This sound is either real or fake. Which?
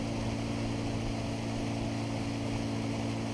real